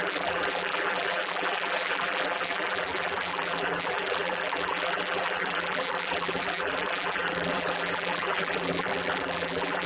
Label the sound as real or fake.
fake